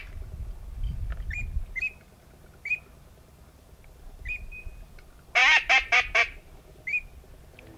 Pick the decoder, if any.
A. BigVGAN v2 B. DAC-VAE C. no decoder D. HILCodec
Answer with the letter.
C